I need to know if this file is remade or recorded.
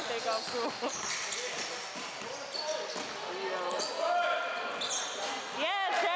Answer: recorded